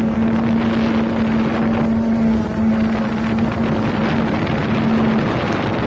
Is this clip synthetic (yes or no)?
no